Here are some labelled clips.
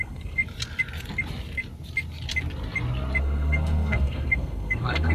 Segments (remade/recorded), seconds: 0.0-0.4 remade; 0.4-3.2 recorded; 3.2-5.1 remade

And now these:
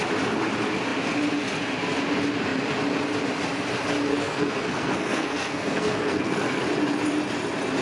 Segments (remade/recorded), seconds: 0.0-4.1 recorded; 4.1-6.6 remade; 6.6-7.8 recorded

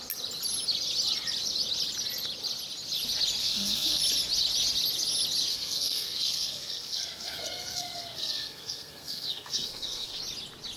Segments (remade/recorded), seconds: 0.0-3.4 recorded; 3.4-4.0 remade; 4.0-5.5 recorded; 5.5-10.2 remade; 10.2-10.8 recorded

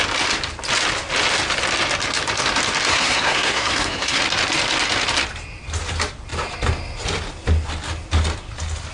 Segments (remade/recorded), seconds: 0.0-2.9 recorded; 2.9-4.2 remade; 4.2-8.9 recorded

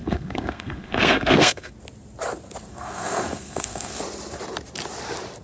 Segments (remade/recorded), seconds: 0.0-1.7 remade; 1.7-2.7 recorded; 2.7-4.0 remade; 4.0-5.4 recorded